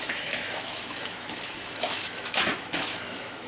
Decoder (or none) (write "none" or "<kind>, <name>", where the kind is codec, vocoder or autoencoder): autoencoder, DAC-VAE